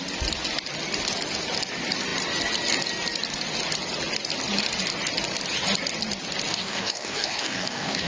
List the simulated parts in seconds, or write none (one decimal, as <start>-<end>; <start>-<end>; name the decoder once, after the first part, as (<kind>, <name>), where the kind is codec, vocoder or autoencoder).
6.5-8.1 (codec, DAC)